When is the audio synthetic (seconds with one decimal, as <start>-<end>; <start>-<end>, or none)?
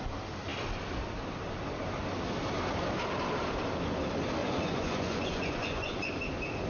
4.4-6.1